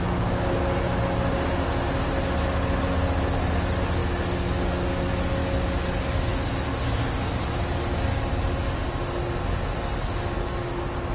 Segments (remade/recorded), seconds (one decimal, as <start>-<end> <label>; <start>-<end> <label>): 0.0-11.1 recorded

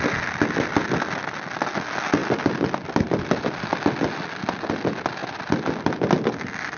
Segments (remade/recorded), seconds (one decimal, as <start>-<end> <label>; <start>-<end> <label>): 0.0-6.8 recorded